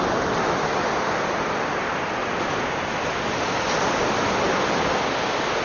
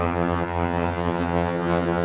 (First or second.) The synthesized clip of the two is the second